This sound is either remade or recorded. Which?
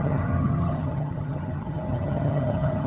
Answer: remade